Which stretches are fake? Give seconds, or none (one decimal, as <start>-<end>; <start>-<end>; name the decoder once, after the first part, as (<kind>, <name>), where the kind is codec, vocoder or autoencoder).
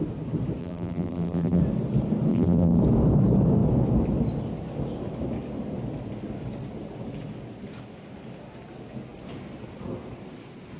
0.6-1.6 (vocoder, BigVGAN v2); 2.3-2.8